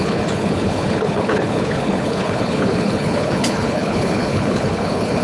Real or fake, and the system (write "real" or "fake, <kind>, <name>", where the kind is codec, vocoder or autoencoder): fake, codec, HILCodec